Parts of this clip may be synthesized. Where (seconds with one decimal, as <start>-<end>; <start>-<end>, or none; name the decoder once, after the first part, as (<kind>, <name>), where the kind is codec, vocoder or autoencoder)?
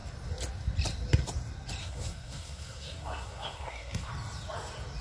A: 1.8-4.1 (codec, SNAC)